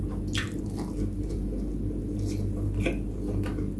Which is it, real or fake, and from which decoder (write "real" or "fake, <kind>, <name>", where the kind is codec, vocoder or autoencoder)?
real